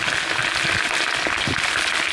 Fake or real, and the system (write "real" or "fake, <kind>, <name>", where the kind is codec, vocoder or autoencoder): real